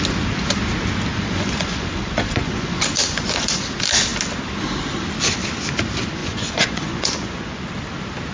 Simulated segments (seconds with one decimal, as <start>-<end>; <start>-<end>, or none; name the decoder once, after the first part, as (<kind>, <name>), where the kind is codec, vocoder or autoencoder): 1.1-3.6 (vocoder, Vocos); 6.2-7.6